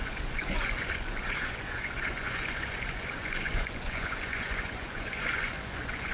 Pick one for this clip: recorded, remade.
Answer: remade